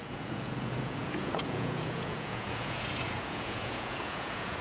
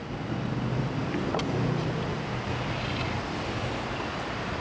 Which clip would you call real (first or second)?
second